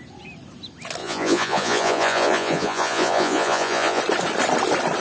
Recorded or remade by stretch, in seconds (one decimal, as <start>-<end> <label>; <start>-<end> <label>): 0.0-1.0 recorded; 1.0-4.0 remade; 4.0-5.0 recorded

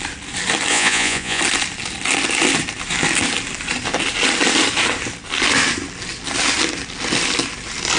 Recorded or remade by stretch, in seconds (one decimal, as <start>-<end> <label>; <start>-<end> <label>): 0.0-0.7 recorded; 0.7-1.4 remade; 1.4-8.0 recorded